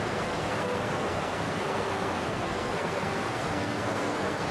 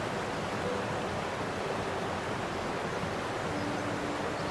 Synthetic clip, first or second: first